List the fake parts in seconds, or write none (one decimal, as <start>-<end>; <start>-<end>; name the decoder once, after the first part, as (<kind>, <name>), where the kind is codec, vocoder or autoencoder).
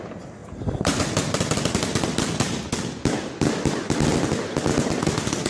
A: 0.4-1.0 (vocoder, BigVGAN v2)